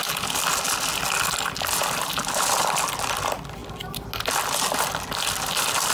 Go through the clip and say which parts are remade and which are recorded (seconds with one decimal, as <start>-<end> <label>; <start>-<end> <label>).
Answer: 0.0-5.9 recorded